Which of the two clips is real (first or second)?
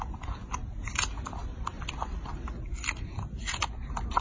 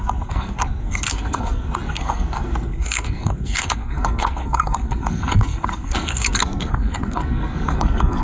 first